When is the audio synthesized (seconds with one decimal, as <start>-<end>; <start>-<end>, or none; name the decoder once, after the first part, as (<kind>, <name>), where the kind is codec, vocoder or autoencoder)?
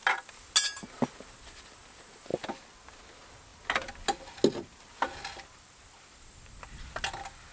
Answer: none